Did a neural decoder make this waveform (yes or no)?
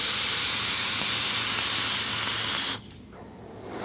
no